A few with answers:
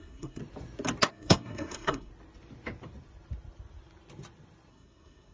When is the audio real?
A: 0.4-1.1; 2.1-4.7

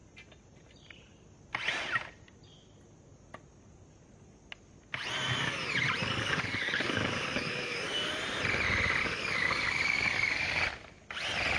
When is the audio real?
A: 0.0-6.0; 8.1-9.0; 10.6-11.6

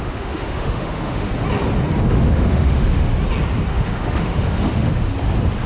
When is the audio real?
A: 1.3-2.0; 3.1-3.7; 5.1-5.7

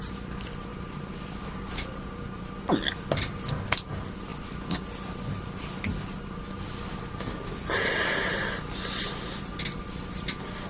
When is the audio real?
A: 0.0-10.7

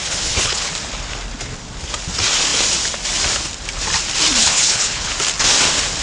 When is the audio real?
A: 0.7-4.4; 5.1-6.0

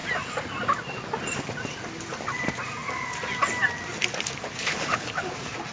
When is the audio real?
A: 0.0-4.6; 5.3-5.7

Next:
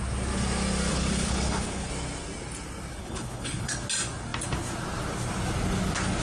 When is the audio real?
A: 0.0-0.9; 1.9-3.0; 3.7-6.2

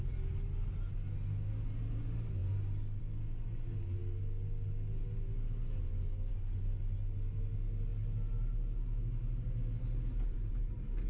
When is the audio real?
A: 0.0-11.1